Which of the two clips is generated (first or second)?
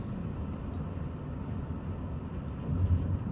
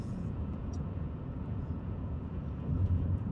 second